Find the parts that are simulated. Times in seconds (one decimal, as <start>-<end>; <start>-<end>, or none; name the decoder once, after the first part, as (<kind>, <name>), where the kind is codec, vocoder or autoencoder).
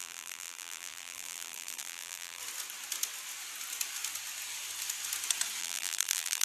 0.0-2.4 (vocoder, BigVGAN v2); 5.6-6.4